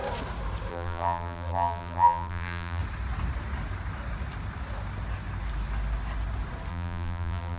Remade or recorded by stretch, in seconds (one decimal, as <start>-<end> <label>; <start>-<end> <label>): 0.0-0.7 recorded; 0.7-2.8 remade; 2.8-6.7 recorded; 6.7-7.6 remade